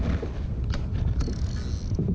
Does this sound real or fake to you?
real